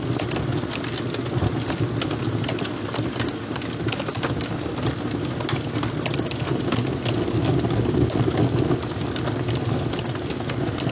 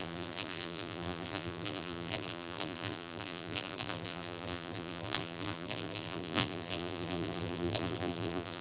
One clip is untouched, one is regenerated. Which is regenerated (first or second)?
second